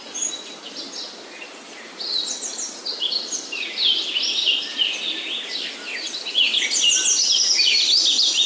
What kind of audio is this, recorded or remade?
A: recorded